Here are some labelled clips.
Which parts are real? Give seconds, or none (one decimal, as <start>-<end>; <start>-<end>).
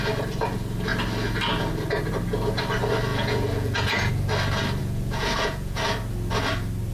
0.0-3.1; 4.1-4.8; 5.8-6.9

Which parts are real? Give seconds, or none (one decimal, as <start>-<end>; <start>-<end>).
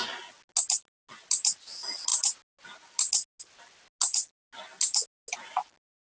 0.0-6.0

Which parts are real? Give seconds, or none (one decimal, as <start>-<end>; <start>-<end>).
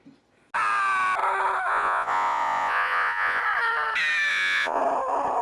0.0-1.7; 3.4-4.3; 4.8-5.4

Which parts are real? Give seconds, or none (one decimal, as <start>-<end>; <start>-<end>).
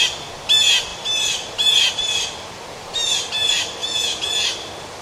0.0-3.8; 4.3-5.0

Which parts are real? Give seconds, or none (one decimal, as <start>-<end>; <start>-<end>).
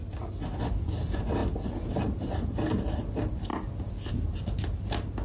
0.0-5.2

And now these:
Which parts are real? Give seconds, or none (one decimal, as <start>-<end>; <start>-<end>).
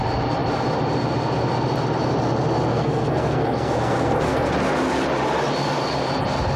0.0-2.7; 4.5-6.6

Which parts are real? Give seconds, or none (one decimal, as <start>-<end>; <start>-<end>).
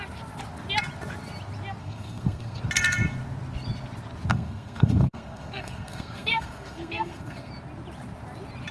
0.0-1.8; 2.6-4.3; 7.5-8.7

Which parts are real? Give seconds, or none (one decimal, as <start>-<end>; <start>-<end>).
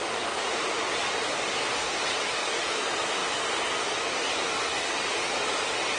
3.2-6.0